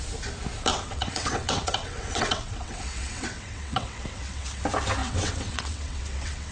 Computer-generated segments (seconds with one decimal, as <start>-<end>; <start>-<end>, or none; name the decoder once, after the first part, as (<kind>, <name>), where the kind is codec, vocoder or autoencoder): 0.7-4.6 (vocoder, WaveNeXt); 5.0-6.5

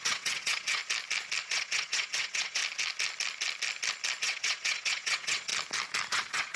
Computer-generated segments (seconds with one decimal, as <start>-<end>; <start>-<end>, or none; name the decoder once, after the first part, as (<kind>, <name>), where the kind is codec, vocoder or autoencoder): 0.0-0.8 (vocoder, WaveNeXt); 1.4-2.6; 4.2-5.5; 6.1-6.6

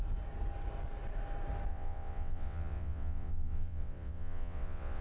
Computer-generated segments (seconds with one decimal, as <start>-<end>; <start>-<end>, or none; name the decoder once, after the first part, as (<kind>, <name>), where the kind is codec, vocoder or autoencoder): 1.7-5.0 (vocoder, WaveNeXt)

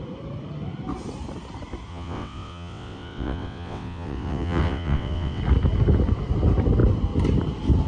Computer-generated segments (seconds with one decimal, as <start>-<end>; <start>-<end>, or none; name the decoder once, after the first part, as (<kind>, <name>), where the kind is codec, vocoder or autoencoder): 1.9-5.4 (vocoder, WaveNeXt)

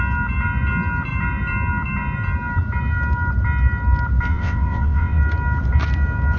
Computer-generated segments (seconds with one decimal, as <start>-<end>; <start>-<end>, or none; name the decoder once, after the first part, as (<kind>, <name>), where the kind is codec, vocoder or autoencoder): 4.3-5.2 (vocoder, WaveNeXt)